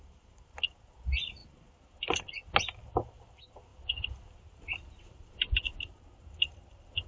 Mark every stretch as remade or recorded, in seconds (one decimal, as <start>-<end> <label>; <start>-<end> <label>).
0.0-7.1 recorded